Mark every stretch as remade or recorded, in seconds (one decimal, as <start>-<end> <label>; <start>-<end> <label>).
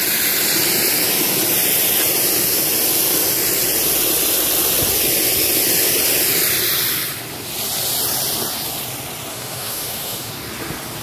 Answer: 0.0-9.3 recorded; 9.3-10.3 remade; 10.3-11.0 recorded